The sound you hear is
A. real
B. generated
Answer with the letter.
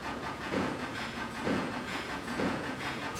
B